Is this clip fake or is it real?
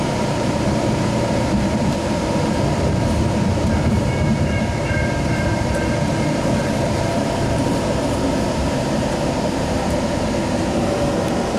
fake